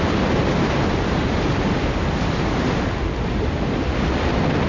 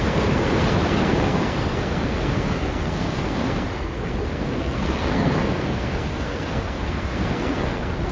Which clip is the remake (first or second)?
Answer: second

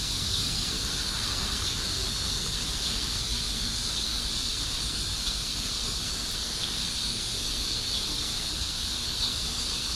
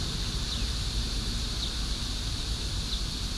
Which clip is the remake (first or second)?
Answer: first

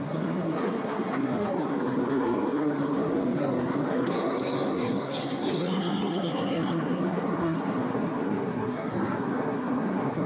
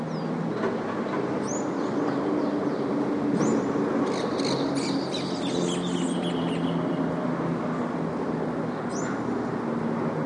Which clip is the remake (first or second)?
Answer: first